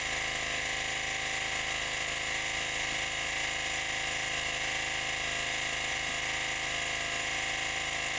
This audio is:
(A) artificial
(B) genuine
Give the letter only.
B